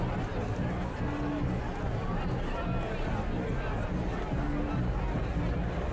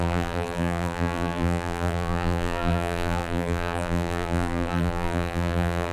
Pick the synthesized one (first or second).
second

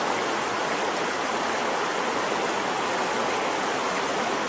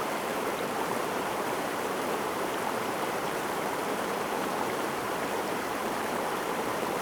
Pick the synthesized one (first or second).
second